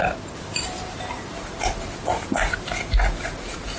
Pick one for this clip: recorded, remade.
recorded